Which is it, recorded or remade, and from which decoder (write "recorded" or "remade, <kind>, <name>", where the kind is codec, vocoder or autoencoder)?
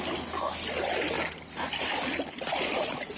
recorded